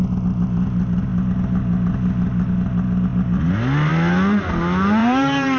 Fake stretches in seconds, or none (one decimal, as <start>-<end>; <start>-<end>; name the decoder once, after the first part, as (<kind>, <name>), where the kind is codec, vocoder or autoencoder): 5.0-5.6 (vocoder, BigVGAN v2)